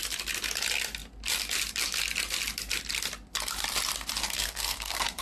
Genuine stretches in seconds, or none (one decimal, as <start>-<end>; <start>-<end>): 0.0-4.2

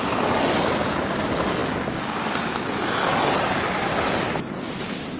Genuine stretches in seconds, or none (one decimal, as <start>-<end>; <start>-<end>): 0.0-5.2